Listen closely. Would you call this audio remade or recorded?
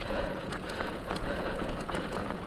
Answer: remade